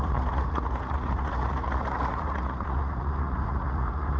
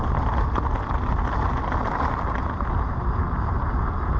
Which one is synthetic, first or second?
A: first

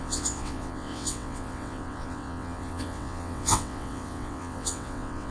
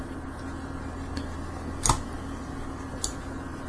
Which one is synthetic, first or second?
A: first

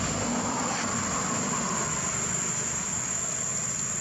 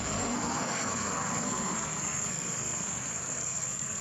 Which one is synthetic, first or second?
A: second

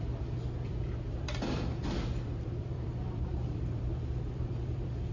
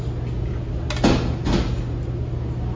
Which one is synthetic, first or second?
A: first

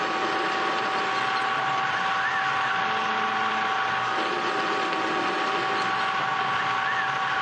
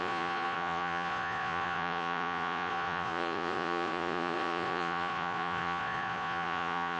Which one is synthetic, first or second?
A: second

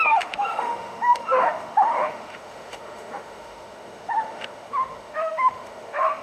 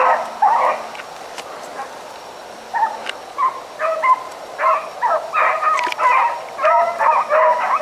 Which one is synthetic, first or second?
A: first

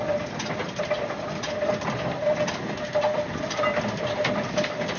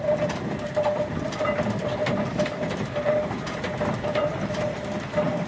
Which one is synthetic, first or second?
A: second